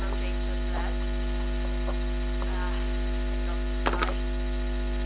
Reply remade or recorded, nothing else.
recorded